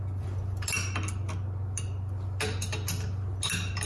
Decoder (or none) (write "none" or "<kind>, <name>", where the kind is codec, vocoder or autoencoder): none